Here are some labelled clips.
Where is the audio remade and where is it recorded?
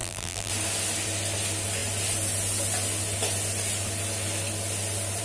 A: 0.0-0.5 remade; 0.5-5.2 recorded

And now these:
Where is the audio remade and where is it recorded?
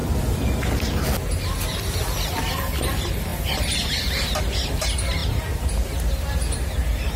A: 0.0-0.7 remade; 0.7-7.2 recorded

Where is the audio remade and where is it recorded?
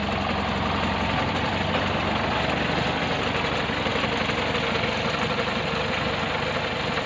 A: 0.0-7.1 recorded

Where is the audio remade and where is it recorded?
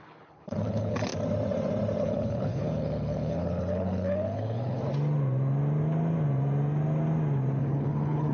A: 0.0-1.1 remade; 1.1-2.0 recorded; 2.0-4.8 remade; 4.8-7.6 recorded; 7.6-8.3 remade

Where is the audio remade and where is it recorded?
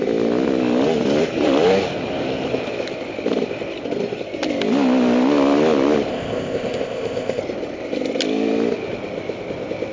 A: 0.0-6.1 recorded; 6.1-7.4 remade; 7.4-9.9 recorded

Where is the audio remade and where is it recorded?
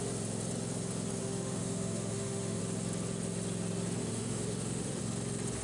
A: 0.0-1.2 recorded; 1.2-2.6 remade; 2.6-4.0 recorded; 4.0-5.0 remade; 5.0-5.6 recorded